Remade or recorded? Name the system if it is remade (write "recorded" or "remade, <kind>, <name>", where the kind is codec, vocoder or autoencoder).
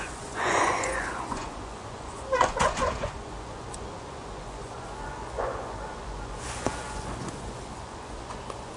remade, vocoder, Vocos